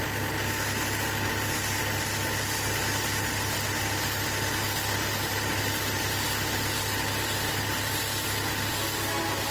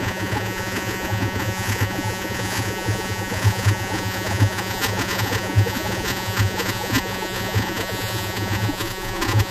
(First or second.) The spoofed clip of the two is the second